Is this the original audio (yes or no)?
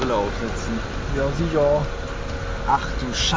yes